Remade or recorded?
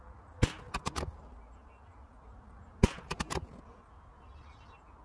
recorded